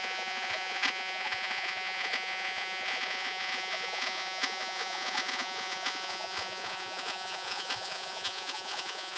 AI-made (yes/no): yes